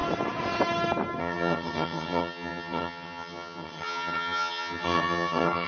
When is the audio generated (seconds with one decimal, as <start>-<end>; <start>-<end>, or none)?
1.2-5.7